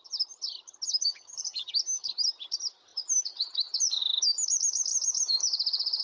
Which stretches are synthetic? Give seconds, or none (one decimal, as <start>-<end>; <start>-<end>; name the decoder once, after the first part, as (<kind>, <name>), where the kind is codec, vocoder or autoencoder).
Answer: 1.1-1.7 (vocoder, HiFi-GAN)